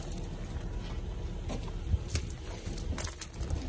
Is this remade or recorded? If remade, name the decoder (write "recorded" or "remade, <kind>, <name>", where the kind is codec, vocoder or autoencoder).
recorded